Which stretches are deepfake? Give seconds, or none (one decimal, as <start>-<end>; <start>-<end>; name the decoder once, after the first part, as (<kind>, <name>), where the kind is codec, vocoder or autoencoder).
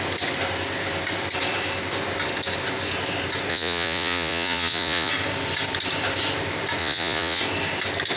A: 3.5-5.1 (vocoder, Vocos); 6.8-7.4